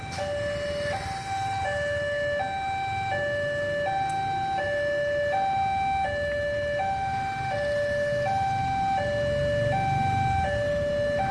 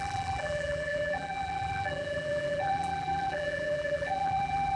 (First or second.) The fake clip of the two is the second